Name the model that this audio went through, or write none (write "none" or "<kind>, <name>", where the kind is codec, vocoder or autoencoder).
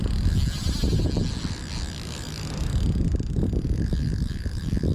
none